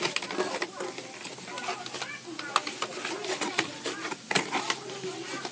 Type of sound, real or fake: real